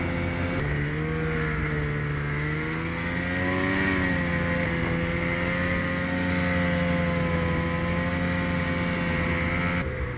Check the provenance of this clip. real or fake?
real